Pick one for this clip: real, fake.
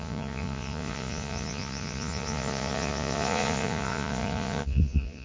fake